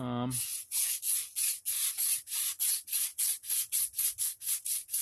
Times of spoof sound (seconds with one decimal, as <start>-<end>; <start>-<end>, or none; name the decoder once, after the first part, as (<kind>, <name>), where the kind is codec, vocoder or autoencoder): none